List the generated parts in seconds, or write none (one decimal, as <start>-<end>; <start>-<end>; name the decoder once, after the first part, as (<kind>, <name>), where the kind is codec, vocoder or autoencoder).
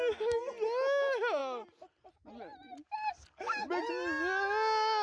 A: none